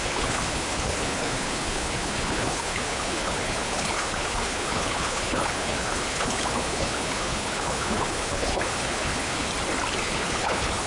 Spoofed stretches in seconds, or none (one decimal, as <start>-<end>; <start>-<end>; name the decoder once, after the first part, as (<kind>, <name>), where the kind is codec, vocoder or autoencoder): 0.0-9.5 (codec, HILCodec); 10.0-10.9